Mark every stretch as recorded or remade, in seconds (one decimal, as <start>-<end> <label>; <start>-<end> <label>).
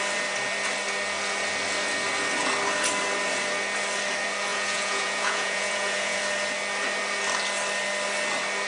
0.0-4.5 recorded; 4.5-6.2 remade; 6.2-8.7 recorded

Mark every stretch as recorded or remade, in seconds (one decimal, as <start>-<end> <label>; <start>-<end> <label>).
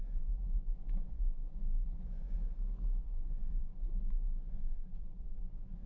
0.0-2.4 remade; 2.4-3.0 recorded; 3.0-5.9 remade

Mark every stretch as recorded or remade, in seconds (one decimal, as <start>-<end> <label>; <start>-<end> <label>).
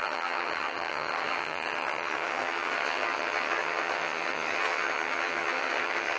0.0-6.2 remade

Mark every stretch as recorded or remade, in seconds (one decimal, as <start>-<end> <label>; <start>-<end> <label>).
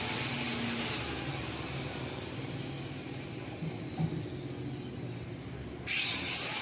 0.0-6.6 recorded